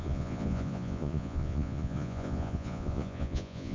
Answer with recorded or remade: remade